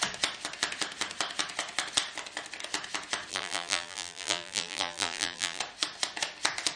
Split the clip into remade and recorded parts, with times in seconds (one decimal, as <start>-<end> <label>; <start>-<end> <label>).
0.0-3.3 recorded; 3.3-5.6 remade; 5.6-6.8 recorded